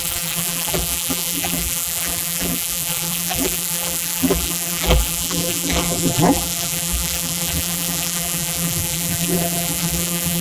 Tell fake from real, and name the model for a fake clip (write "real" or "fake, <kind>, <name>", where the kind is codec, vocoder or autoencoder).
fake, vocoder, BigVGAN v2